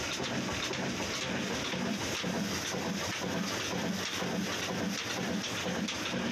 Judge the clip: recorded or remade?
recorded